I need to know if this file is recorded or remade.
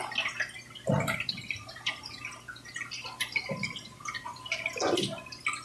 recorded